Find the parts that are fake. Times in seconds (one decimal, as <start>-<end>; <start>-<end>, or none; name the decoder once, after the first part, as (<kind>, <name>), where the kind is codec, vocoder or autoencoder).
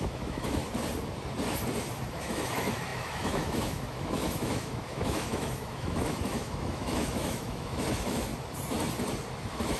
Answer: 0.0-0.6 (autoencoder, DAC-VAE); 2.1-8.3; 9.3-9.8